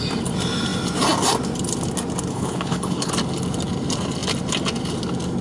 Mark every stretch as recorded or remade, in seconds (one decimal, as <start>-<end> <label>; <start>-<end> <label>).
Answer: 0.0-2.3 recorded; 2.3-3.1 remade; 3.1-5.4 recorded

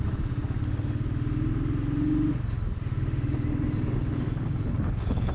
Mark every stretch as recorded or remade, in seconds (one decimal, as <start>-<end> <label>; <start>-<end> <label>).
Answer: 0.0-4.0 recorded; 4.0-5.3 remade

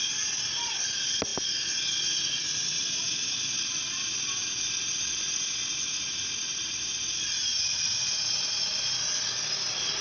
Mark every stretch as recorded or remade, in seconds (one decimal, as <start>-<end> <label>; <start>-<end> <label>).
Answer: 0.0-10.0 recorded